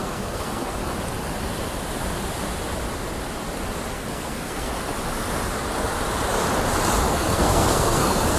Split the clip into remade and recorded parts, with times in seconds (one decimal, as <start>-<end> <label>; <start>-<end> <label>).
0.0-0.8 remade; 0.8-3.9 recorded; 3.9-4.7 remade; 4.7-7.1 recorded; 7.1-8.4 remade